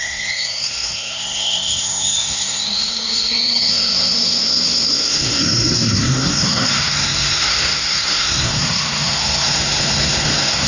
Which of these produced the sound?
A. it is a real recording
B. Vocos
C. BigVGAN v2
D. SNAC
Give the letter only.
D